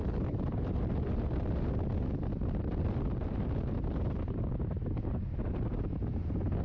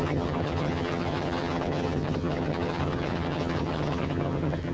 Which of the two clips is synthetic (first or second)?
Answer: second